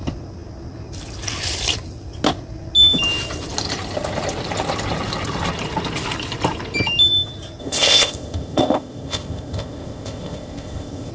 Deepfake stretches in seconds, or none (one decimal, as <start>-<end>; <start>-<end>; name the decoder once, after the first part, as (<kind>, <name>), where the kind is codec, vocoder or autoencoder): 7.6-11.1 (codec, ZipCodec)